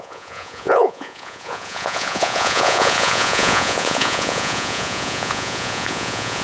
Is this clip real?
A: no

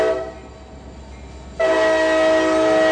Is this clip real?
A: yes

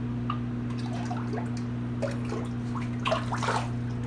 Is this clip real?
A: yes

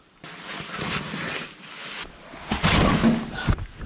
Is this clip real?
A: yes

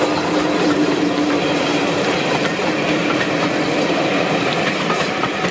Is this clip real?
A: yes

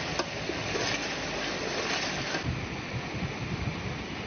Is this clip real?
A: yes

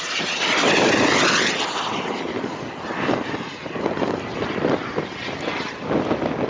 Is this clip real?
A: yes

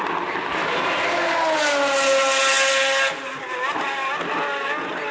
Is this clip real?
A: yes